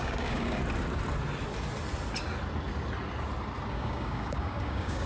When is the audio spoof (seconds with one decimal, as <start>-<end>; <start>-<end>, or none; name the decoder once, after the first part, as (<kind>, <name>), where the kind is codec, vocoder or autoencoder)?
0.0-0.6 (codec, DAC); 3.7-5.1